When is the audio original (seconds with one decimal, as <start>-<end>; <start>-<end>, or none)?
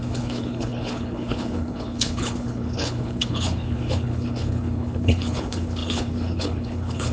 none